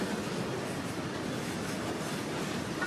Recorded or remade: recorded